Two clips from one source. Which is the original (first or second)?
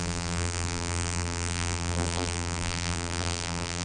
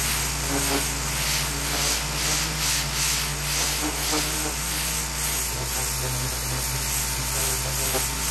second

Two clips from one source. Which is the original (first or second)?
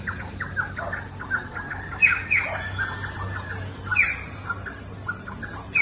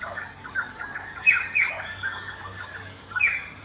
first